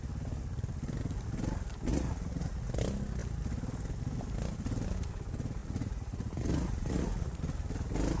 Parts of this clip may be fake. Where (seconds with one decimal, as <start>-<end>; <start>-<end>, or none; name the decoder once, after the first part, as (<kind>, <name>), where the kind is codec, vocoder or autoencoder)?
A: 1.9-2.8 (vocoder, Vocos); 5.6-7.4